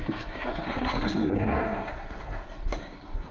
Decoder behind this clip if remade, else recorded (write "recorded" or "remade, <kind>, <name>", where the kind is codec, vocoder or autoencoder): remade, codec, SNAC